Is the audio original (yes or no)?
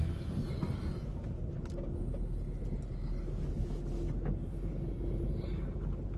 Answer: yes